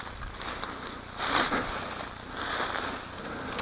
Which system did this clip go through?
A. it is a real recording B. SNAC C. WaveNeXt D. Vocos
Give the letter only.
A